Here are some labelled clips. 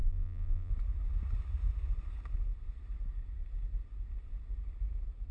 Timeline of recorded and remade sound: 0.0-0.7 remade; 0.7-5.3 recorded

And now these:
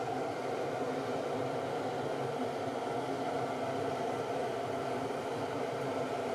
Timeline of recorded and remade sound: 0.0-0.4 remade; 0.4-3.9 recorded; 3.9-4.4 remade; 4.4-5.2 recorded; 5.2-6.3 remade